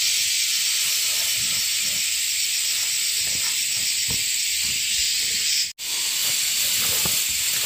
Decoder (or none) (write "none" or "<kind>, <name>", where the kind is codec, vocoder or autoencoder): none